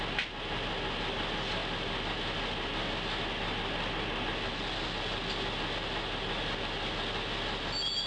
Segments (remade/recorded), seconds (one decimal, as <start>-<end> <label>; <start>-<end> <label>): 0.0-8.1 recorded